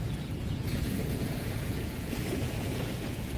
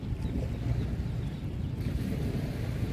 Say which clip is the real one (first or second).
second